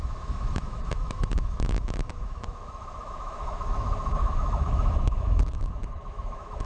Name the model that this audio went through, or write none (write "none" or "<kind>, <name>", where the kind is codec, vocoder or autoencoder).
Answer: autoencoder, DAC-VAE